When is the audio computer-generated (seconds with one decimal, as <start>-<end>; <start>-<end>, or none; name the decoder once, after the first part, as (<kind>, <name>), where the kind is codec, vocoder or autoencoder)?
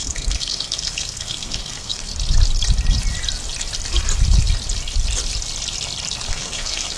0.0-2.1 (codec, SNAC); 6.3-7.0